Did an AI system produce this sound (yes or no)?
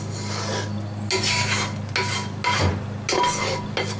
no